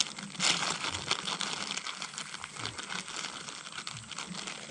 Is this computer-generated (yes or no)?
no